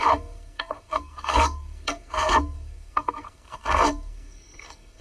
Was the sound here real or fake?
fake